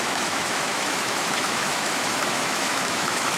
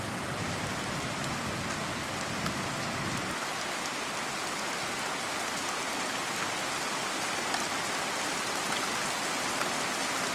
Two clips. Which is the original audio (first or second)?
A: second